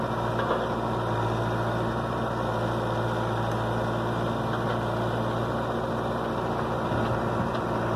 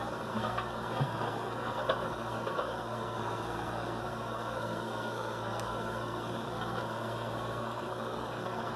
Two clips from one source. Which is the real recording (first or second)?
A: first